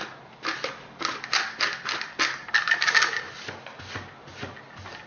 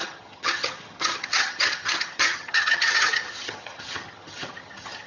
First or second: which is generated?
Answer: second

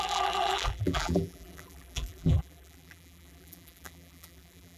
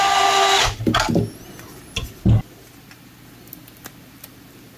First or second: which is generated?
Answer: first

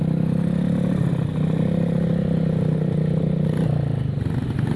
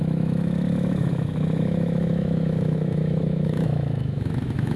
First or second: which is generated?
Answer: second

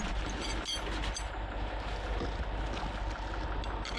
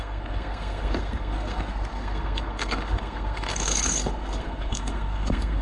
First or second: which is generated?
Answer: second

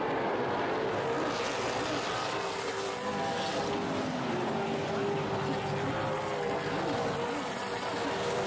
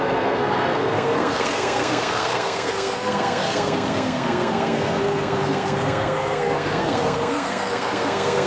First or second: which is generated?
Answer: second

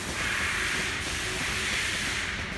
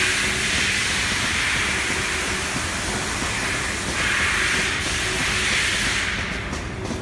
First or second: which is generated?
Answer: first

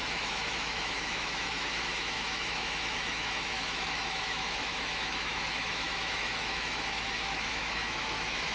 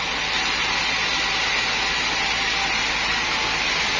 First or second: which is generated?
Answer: first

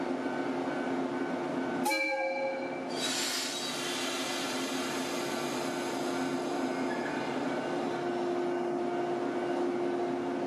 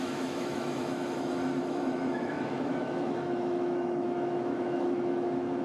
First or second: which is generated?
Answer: second